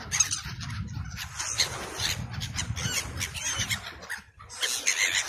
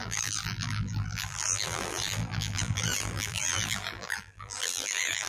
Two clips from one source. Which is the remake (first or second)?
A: second